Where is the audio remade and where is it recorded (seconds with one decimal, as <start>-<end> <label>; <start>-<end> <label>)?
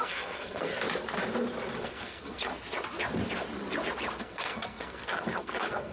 0.0-0.7 remade; 0.7-1.8 recorded; 1.8-2.5 remade; 2.5-4.2 recorded; 4.2-5.9 remade